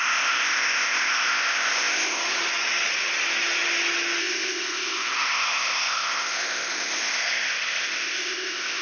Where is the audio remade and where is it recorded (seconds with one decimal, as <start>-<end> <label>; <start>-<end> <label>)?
0.0-2.2 remade; 2.2-4.2 recorded; 4.2-8.8 remade

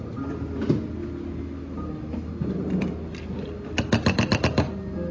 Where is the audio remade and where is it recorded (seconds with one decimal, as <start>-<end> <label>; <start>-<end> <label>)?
0.0-5.1 recorded

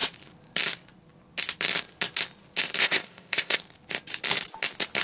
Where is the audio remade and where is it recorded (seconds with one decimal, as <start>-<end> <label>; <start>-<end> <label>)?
0.0-2.8 recorded; 2.8-3.6 remade; 3.6-5.0 recorded

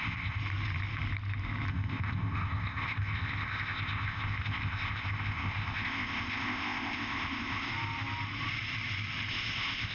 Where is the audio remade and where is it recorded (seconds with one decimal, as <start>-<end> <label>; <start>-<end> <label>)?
0.0-0.4 remade; 0.4-1.7 recorded; 1.7-7.7 remade; 7.7-9.3 recorded; 9.3-9.9 remade

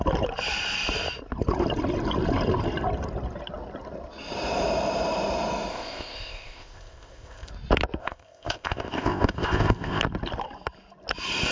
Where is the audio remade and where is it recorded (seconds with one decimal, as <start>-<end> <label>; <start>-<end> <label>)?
0.0-5.7 recorded; 5.7-7.5 remade; 7.5-8.0 recorded; 8.0-10.0 remade; 10.0-11.5 recorded

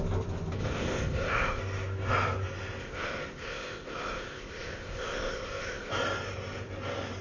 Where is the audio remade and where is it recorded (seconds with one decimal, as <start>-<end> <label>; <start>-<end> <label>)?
0.0-0.6 recorded; 0.6-1.6 remade; 1.6-2.8 recorded; 2.8-5.9 remade; 5.9-7.2 recorded

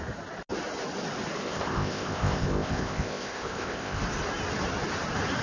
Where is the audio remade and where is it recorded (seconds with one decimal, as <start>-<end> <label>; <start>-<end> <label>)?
0.0-1.4 recorded; 1.4-4.0 remade; 4.0-5.4 recorded